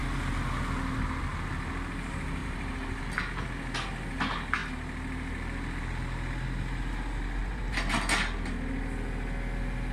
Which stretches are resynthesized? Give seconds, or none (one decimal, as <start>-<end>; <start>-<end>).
2.4-3.0; 7.4-7.9